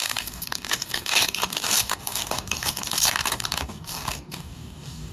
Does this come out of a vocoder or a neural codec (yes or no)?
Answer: yes